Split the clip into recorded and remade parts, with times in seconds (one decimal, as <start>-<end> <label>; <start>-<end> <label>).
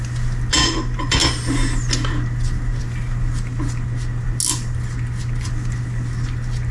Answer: 0.0-6.7 recorded